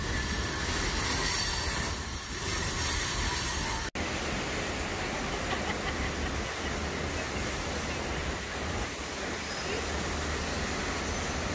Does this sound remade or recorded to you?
recorded